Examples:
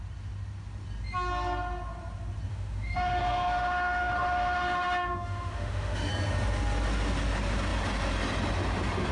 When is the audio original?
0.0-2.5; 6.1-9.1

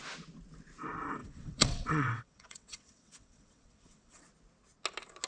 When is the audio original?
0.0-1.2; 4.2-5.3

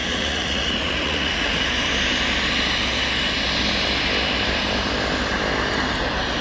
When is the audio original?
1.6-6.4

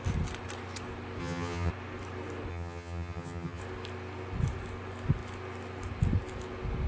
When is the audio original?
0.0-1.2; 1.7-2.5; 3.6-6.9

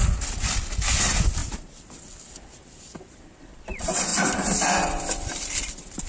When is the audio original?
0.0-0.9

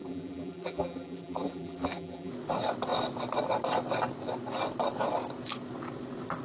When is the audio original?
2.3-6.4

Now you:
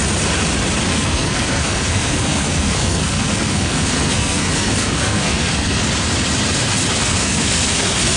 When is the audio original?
0.0-0.9; 5.8-7.0

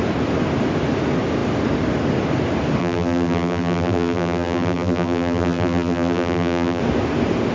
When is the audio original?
0.0-2.8; 6.8-7.5